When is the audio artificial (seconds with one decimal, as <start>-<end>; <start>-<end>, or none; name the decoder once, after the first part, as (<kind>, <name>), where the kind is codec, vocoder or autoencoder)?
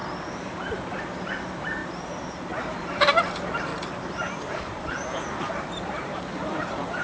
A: 0.0-1.8 (vocoder, BigVGAN v2); 3.3-3.7; 4.3-7.0